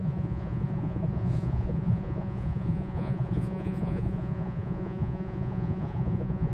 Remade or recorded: remade